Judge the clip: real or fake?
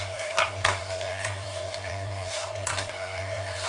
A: fake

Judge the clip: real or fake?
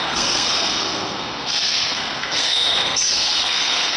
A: fake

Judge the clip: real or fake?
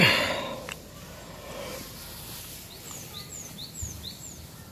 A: real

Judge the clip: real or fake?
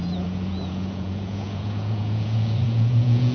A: fake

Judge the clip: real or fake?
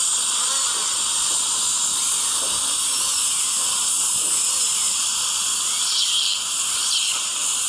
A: real